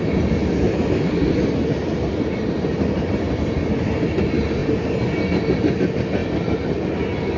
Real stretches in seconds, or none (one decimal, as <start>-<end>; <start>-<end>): 0.0-6.2; 6.9-7.4